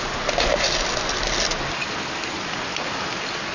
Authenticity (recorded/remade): recorded